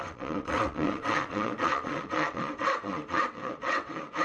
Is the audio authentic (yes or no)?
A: no